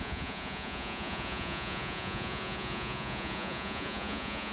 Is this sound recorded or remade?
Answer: remade